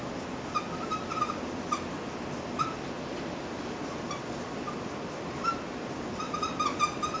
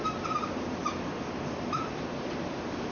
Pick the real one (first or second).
first